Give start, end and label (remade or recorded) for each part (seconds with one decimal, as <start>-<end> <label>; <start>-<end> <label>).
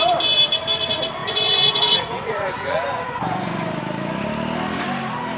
0.0-1.2 recorded; 1.2-3.8 remade; 3.8-5.4 recorded